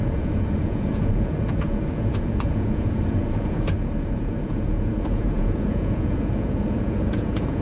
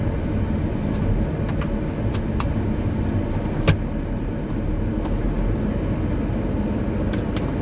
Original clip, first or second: second